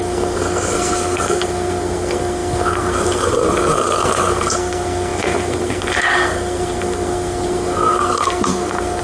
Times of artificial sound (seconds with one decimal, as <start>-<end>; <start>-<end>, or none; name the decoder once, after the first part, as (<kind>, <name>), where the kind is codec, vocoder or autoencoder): 0.0-9.0 (codec, SNAC)